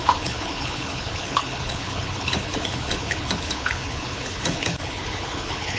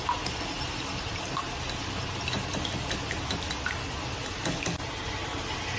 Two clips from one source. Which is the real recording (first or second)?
second